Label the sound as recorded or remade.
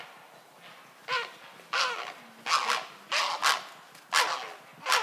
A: recorded